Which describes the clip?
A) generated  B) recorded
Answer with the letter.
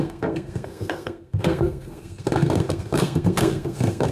A